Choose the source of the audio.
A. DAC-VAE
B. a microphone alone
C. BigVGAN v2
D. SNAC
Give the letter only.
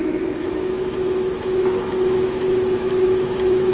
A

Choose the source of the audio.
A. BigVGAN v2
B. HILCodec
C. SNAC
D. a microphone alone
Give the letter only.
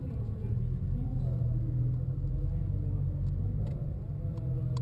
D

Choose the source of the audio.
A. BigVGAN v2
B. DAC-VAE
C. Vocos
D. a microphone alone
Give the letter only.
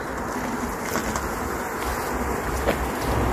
D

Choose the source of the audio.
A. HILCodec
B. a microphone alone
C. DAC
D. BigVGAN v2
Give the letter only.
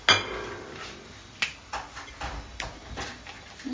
B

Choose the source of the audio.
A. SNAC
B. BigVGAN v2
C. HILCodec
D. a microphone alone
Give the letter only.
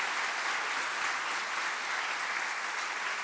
D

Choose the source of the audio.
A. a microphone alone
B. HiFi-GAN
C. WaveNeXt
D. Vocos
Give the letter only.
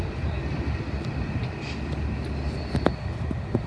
A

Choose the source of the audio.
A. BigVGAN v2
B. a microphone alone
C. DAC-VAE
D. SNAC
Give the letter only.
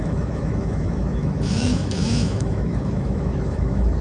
C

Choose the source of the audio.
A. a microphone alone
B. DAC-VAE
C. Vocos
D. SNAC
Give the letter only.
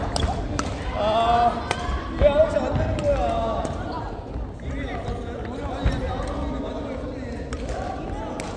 A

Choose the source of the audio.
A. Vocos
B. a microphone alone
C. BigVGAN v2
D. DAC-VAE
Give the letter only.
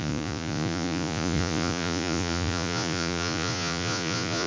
A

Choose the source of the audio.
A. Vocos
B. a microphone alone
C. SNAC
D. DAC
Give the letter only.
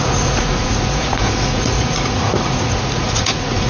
A